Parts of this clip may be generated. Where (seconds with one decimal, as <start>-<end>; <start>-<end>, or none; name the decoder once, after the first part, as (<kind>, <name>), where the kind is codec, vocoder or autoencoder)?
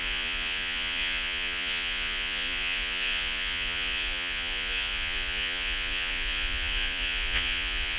0.0-8.0 (vocoder, Vocos)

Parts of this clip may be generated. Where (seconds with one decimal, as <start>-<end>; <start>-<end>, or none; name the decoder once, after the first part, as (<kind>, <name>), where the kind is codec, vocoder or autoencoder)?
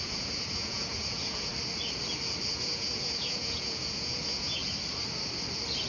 0.0-1.5 (vocoder, Vocos); 2.5-4.6